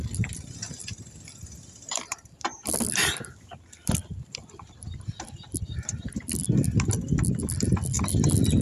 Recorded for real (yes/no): no